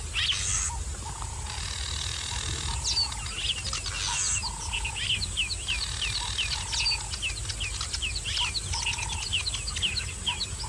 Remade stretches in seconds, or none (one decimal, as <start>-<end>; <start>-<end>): none